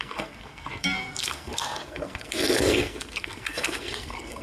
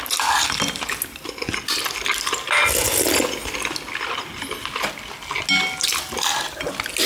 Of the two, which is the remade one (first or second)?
first